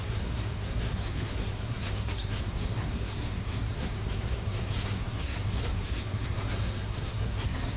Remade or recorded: remade